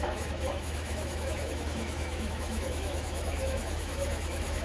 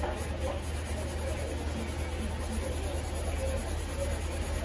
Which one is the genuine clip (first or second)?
second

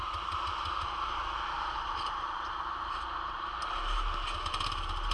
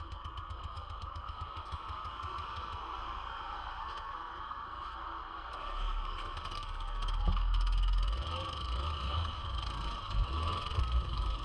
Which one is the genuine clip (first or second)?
first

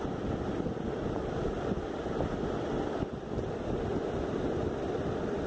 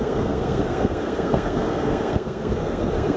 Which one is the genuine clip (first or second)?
first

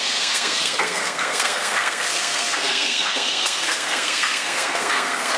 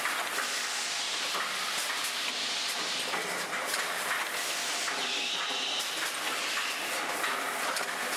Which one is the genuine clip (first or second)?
second